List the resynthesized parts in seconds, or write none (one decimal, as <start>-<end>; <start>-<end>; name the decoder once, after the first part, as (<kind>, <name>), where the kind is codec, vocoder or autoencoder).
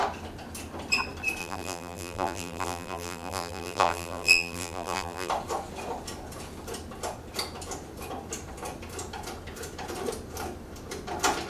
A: 1.4-5.3 (vocoder, BigVGAN v2)